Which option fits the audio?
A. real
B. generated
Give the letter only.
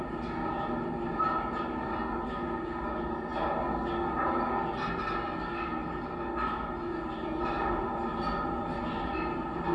A